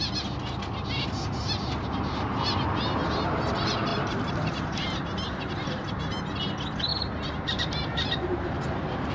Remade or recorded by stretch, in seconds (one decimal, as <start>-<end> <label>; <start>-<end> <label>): 0.0-3.9 recorded; 3.9-6.4 remade; 6.4-6.9 recorded; 6.9-9.1 remade